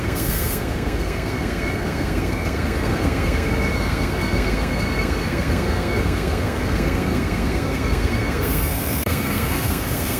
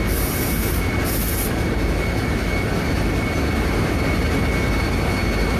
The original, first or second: second